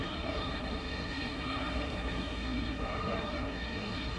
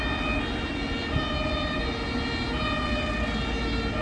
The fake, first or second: first